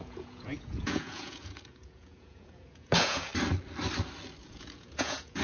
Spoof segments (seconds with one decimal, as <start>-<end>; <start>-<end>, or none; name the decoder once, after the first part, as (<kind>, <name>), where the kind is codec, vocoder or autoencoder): 0.0-3.3 (vocoder, Vocos); 4.4-5.4